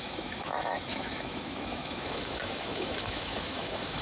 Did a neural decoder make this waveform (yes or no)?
yes